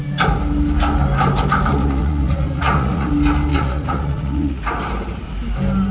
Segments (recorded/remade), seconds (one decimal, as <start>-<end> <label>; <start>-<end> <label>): 0.0-1.7 recorded; 1.7-3.1 remade; 3.1-3.5 recorded; 3.5-4.6 remade; 4.6-5.9 recorded

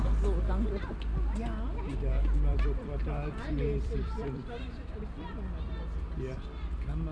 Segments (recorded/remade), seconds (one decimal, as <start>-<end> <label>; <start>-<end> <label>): 0.0-2.5 recorded; 2.5-5.1 remade; 5.1-7.1 recorded

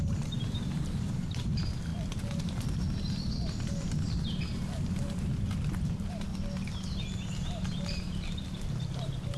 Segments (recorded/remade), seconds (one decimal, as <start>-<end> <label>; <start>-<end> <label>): 0.0-1.9 remade; 1.9-3.4 recorded; 3.4-6.3 remade; 6.3-7.2 recorded; 7.2-9.4 remade

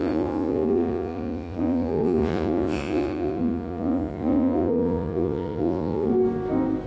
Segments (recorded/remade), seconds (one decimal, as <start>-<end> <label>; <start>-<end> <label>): 0.0-6.1 remade; 6.1-6.9 recorded

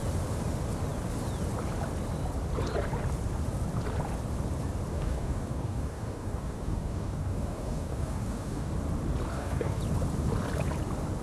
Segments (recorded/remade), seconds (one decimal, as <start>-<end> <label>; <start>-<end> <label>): 0.0-4.9 recorded; 4.9-8.7 remade; 8.7-9.3 recorded; 9.3-9.8 remade; 9.8-11.2 recorded

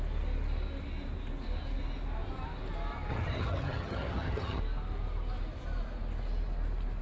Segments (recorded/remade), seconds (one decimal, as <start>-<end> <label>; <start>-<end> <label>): 0.0-3.1 recorded; 3.1-4.6 remade; 4.6-7.0 recorded

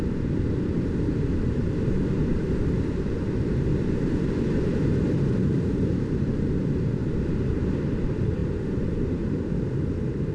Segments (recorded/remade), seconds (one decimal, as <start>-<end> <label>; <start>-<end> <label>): 0.0-7.0 remade; 7.0-7.5 recorded; 7.5-10.3 remade

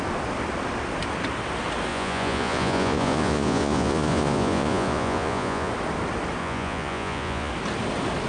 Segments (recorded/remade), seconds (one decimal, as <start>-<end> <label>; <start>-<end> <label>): 0.0-1.9 recorded; 1.9-5.7 remade; 5.7-6.4 recorded; 6.4-7.5 remade; 7.5-8.3 recorded